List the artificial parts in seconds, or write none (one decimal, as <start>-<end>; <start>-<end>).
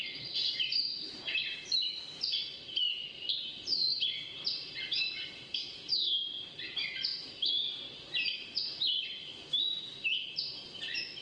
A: none